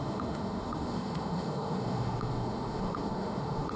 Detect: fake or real fake